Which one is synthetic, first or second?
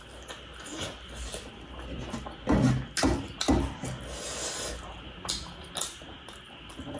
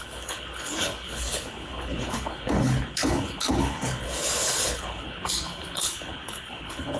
second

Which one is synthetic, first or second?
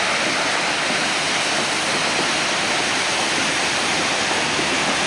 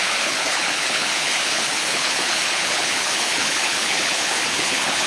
second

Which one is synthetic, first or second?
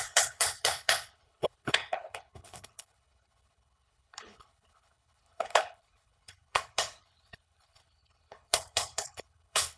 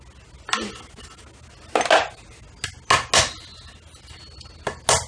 first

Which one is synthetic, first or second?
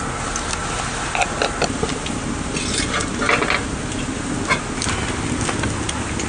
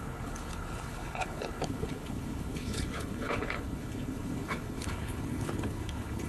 second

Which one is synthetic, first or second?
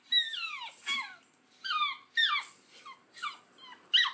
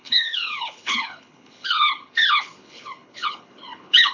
second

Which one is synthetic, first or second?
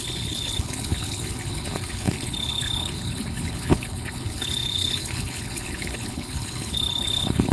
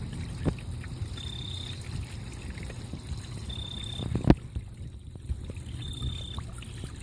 first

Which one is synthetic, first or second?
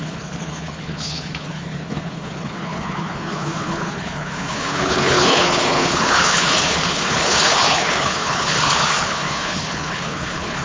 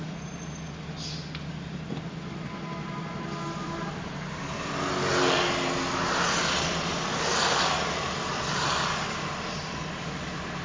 first